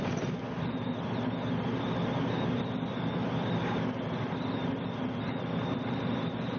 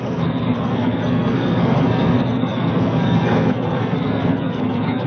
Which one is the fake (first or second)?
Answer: second